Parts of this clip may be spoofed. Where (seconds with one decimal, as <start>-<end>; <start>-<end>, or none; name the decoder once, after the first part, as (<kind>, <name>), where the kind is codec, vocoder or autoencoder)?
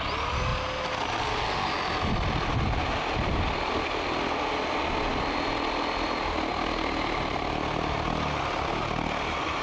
none